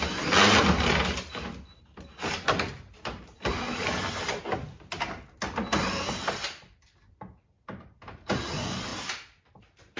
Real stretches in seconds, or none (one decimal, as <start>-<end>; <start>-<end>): 0.0-10.0